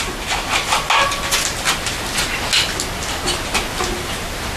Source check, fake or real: real